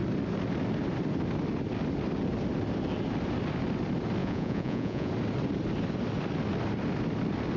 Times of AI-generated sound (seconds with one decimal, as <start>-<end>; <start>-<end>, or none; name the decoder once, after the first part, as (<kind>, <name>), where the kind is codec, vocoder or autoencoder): 4.2-5.1 (vocoder, Vocos)